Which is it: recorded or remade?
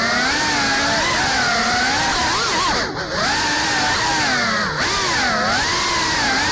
recorded